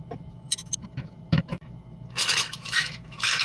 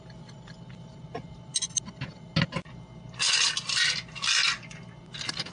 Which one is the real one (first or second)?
second